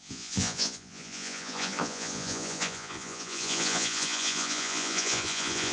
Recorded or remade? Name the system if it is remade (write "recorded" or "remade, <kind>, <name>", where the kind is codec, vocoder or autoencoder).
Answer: remade, vocoder, Vocos